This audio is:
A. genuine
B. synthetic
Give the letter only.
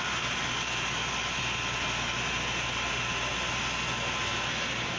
A